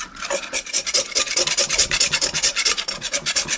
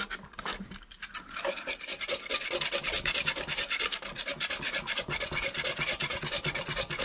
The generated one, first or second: first